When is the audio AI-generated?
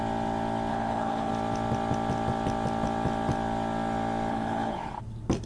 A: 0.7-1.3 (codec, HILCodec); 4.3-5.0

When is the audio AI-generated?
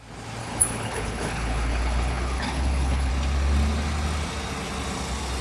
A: 0.4-3.1 (codec, HILCodec)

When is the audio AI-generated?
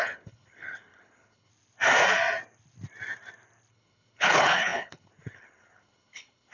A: 0.0-1.5 (codec, HILCodec); 3.7-6.5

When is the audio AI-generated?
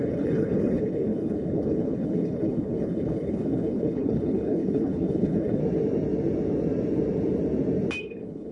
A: 0.0-5.6 (codec, HILCodec); 8.0-8.5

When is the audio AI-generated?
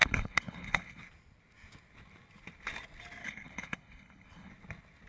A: 0.0-1.0 (codec, HILCodec); 3.2-4.5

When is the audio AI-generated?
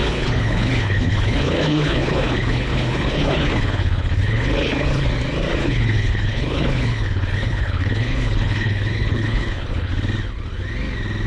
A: 0.0-5.1 (codec, HILCodec); 5.6-9.9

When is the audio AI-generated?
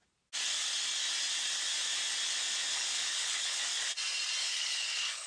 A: 2.7-3.6 (codec, HILCodec); 4.4-5.3